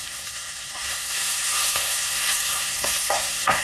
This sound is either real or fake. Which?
fake